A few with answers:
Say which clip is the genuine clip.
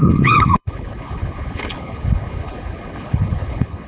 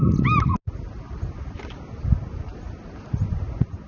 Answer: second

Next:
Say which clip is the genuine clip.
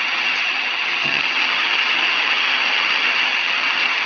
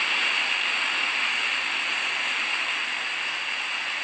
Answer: second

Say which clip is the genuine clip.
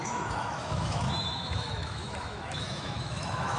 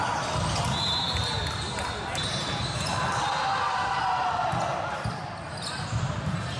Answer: second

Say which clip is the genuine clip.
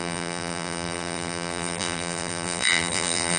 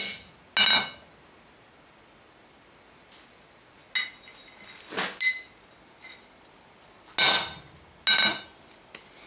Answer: second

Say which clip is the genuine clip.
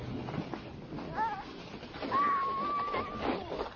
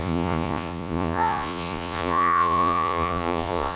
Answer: first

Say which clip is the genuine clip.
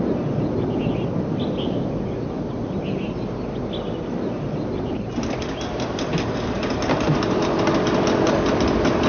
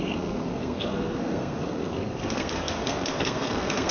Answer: first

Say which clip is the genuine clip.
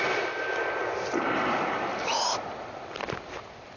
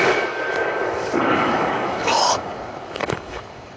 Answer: first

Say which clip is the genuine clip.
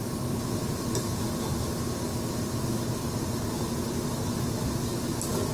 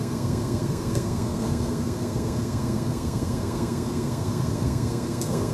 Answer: first